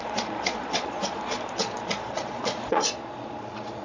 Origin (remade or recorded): remade